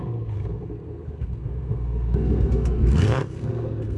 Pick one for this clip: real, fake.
fake